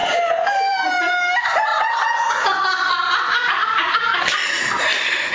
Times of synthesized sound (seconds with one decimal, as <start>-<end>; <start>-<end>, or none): 0.0-4.1